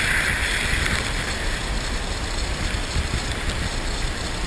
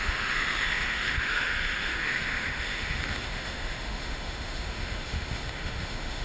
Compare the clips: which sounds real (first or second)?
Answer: first